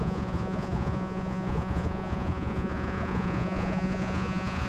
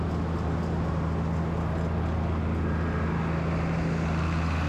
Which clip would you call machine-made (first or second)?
first